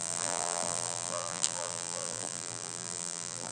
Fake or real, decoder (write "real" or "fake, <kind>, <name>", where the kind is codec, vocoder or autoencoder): fake, vocoder, BigVGAN v2